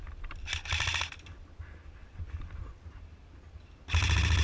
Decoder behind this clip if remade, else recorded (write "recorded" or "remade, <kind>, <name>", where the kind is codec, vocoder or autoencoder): recorded